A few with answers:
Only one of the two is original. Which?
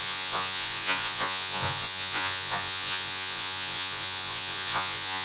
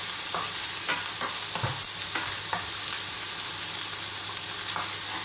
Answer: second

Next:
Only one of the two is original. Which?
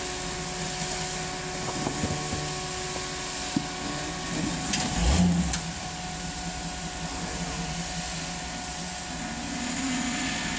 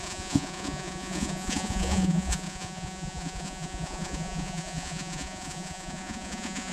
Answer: first